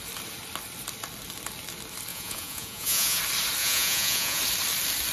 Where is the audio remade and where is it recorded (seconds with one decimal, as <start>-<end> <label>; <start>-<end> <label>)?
0.0-2.1 recorded; 2.1-3.2 remade; 3.2-3.6 recorded; 3.6-4.4 remade; 4.4-5.1 recorded